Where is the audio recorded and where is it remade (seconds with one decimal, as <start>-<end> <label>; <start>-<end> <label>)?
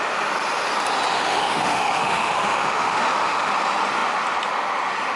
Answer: 0.0-1.1 recorded; 1.1-3.5 remade; 3.5-5.2 recorded